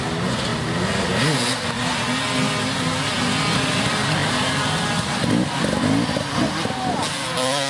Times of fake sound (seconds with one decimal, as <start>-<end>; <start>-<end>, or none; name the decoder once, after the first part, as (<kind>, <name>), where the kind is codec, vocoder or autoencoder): none